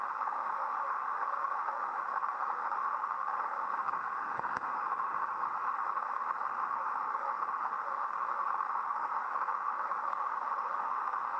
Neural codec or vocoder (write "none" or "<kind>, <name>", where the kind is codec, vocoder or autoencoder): autoencoder, DAC-VAE